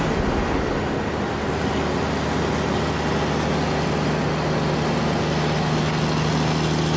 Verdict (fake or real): real